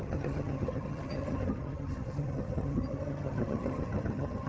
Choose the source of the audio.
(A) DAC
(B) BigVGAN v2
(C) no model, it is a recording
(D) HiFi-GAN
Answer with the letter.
D